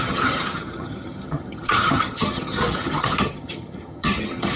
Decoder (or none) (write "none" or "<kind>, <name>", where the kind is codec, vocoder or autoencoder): vocoder, HiFi-GAN